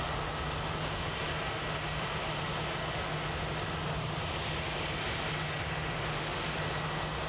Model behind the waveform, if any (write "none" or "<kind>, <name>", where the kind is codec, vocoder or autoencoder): none